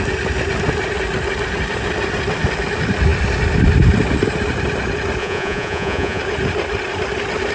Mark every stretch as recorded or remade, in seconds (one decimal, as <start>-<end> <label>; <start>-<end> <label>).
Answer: 0.0-5.2 recorded; 5.2-6.2 remade; 6.2-7.5 recorded